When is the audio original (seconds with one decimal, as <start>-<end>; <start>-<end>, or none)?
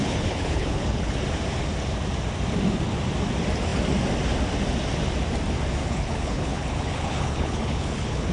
1.2-5.8